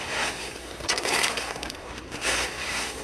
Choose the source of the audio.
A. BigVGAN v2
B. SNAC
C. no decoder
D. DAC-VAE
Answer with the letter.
B